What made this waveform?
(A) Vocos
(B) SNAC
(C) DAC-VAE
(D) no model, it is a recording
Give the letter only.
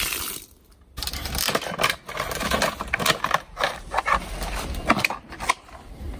D